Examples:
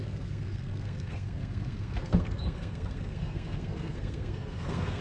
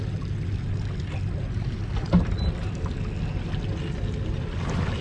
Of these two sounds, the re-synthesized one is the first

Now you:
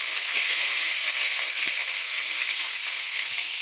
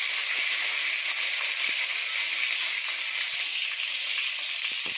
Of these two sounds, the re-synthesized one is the first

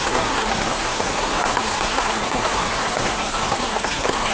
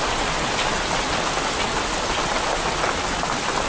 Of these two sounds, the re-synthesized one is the first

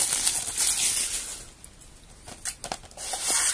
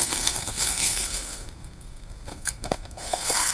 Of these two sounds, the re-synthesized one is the second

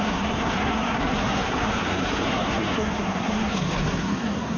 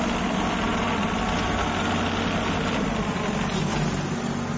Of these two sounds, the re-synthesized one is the first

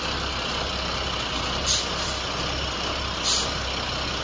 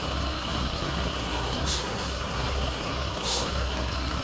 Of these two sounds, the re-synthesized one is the second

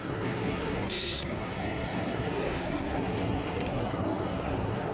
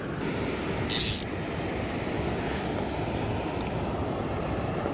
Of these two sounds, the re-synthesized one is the first